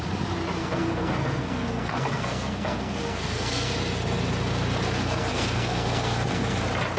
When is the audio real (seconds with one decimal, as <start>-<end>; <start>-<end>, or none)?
0.0-0.6; 3.7-5.0; 6.6-7.0